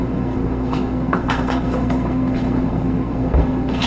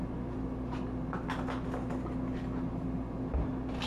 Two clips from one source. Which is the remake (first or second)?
first